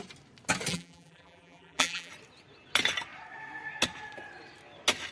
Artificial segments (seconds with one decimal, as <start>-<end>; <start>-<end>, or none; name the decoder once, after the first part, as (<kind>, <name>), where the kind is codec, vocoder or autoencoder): 0.7-2.1 (vocoder, BigVGAN v2)